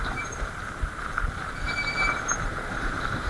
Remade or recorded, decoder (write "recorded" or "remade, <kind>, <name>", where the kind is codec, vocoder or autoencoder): remade, vocoder, BigVGAN v2